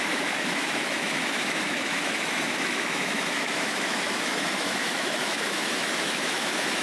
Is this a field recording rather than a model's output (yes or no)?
no